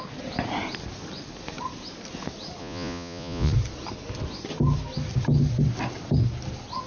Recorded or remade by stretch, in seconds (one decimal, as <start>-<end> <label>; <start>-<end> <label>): 0.0-2.6 recorded; 2.6-3.5 remade; 3.5-6.9 recorded